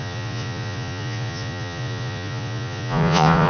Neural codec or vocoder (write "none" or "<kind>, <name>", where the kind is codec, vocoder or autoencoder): vocoder, Vocos